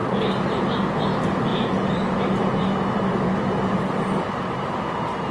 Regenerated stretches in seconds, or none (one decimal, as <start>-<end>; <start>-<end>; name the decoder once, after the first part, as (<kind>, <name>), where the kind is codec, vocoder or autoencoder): none